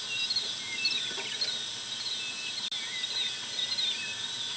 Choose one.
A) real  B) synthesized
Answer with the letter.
A